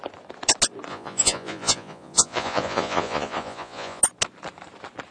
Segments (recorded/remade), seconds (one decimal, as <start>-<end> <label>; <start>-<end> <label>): 0.0-0.9 recorded; 0.9-4.0 remade; 4.0-5.1 recorded